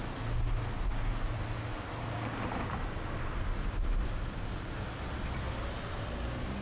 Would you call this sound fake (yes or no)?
no